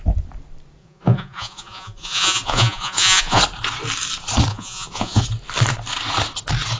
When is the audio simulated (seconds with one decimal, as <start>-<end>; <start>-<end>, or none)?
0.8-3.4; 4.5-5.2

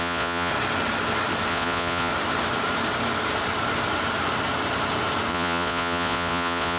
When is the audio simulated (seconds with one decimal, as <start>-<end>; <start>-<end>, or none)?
0.0-0.5; 1.5-2.1; 5.3-6.8

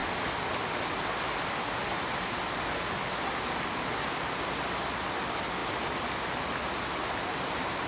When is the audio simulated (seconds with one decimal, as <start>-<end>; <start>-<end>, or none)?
none

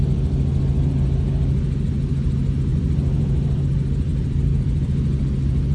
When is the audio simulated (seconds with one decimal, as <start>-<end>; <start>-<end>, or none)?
2.7-3.6; 4.1-4.9

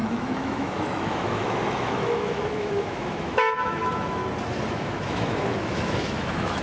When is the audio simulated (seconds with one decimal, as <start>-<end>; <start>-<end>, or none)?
0.0-4.2; 4.7-6.6

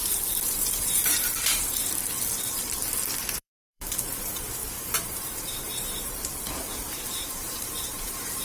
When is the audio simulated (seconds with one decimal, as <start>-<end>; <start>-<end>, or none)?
0.0-1.8; 3.2-8.4